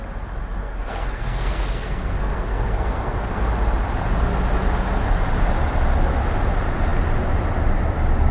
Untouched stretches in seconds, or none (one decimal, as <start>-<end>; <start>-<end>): 0.0-0.6; 3.5-8.3